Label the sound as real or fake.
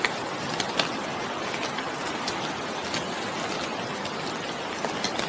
real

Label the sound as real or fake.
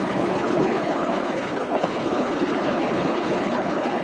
fake